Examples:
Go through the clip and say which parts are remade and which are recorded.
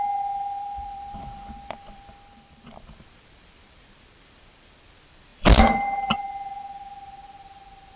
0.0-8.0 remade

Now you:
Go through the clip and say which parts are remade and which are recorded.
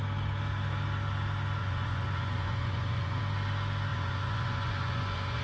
0.0-1.6 recorded; 1.6-3.2 remade; 3.2-3.9 recorded; 3.9-5.4 remade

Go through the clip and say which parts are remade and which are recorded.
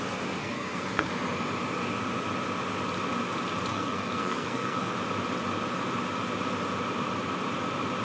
0.0-0.4 recorded; 0.4-1.1 remade; 1.1-3.7 recorded; 3.7-4.9 remade; 4.9-8.0 recorded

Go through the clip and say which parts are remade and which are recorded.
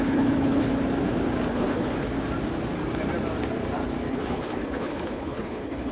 0.0-0.7 remade; 0.7-1.5 recorded; 1.5-2.1 remade; 2.1-4.1 recorded; 4.1-5.9 remade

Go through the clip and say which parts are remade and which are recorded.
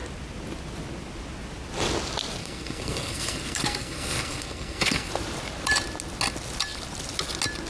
0.0-2.4 recorded; 2.4-5.1 remade; 5.1-7.7 recorded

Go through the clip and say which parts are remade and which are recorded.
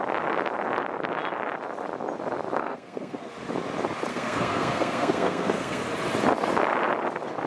0.0-2.6 recorded; 2.6-3.3 remade; 3.3-4.1 recorded; 4.1-5.8 remade; 5.8-7.5 recorded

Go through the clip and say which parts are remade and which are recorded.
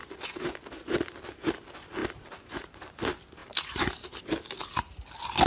0.0-2.0 recorded; 2.0-3.0 remade; 3.0-5.5 recorded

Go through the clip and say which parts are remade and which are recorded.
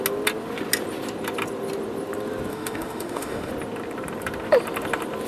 0.0-2.5 recorded; 2.5-3.5 remade; 3.5-5.3 recorded